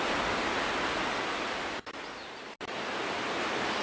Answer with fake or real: real